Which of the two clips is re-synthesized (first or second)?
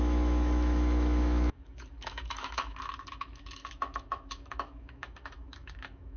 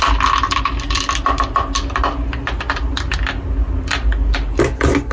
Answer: first